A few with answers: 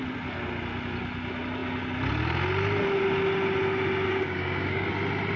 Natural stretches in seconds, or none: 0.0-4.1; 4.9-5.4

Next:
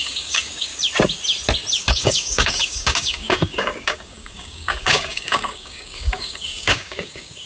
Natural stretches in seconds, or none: 0.7-1.8

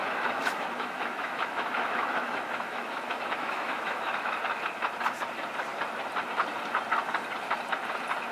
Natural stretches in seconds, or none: 4.4-8.3

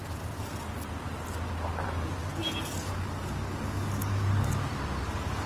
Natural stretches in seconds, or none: 0.0-2.4; 4.5-5.5

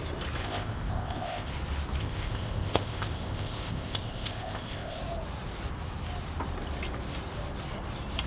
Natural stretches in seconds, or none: 0.0-0.4; 1.5-2.0; 5.0-8.3

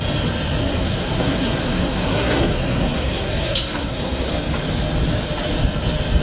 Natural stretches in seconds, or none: 0.0-0.6; 4.3-6.2

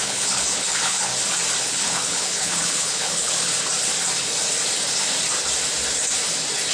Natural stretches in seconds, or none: 1.1-1.6; 3.5-6.7

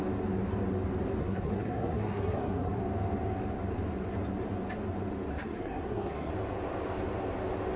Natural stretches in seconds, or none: 0.0-1.2; 2.8-5.3; 6.3-7.8